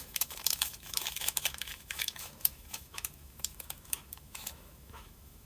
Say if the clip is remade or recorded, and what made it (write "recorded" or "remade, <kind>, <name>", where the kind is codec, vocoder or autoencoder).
remade, autoencoder, DAC-VAE